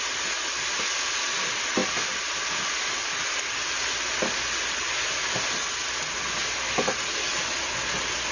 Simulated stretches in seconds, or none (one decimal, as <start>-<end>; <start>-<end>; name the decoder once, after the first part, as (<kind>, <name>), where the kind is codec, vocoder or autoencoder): none